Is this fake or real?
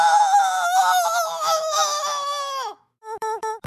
fake